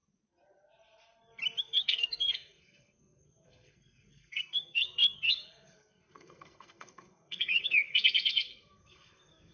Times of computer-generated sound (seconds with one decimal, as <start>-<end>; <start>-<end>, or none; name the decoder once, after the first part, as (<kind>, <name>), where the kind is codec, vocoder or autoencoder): 1.6-9.5 (codec, SNAC)